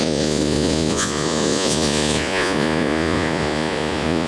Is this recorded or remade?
remade